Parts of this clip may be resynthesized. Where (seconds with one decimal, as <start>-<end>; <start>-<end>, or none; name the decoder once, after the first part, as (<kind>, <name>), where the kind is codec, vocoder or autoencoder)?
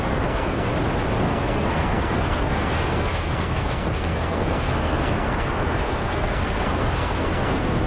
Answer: 0.0-0.7 (codec, SNAC); 1.2-7.9